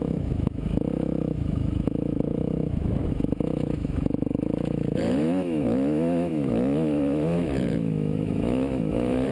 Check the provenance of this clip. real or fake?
fake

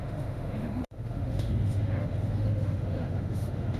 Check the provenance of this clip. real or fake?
fake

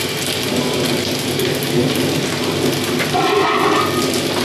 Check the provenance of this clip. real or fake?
real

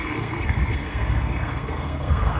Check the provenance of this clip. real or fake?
fake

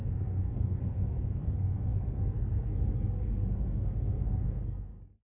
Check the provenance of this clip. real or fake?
fake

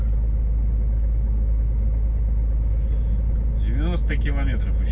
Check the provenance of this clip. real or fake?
real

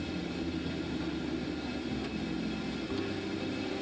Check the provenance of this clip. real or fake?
real